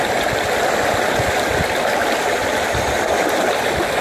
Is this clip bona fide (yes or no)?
yes